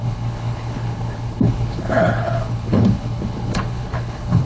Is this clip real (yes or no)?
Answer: no